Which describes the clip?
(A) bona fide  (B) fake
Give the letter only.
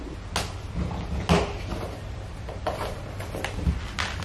A